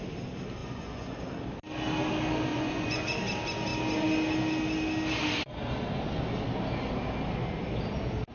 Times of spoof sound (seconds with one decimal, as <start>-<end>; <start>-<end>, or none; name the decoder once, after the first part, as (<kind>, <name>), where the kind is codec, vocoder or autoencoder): 0.6-1.2 (vocoder, Vocos); 2.5-3.0